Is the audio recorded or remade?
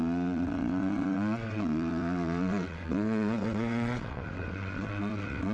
remade